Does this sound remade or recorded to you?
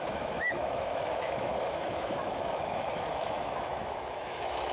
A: remade